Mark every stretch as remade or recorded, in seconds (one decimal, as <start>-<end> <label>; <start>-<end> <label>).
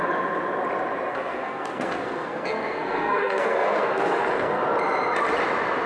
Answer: 0.0-1.1 recorded; 1.1-4.6 remade; 4.6-5.9 recorded